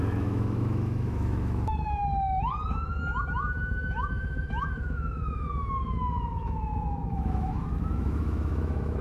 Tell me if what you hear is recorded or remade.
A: remade